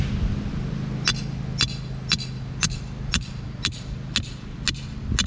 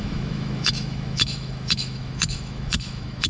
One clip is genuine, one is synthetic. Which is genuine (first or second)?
first